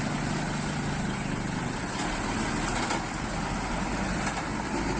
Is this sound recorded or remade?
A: recorded